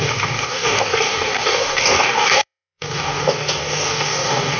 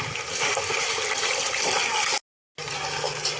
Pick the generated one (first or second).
first